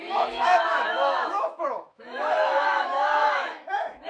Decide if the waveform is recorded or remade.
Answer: remade